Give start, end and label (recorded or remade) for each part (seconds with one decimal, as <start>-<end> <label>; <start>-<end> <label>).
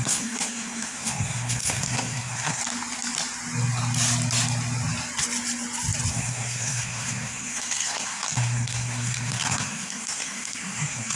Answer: 0.0-2.6 remade; 2.6-6.1 recorded; 6.1-11.2 remade